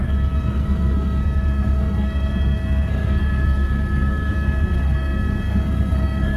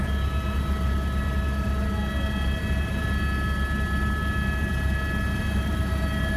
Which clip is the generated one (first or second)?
first